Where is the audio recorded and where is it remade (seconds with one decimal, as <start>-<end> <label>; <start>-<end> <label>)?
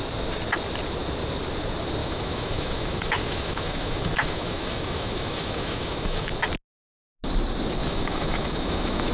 0.0-2.0 recorded; 2.0-6.3 remade; 6.3-7.8 recorded; 7.8-9.1 remade